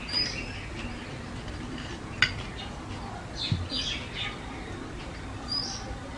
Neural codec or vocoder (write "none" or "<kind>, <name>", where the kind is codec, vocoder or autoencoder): none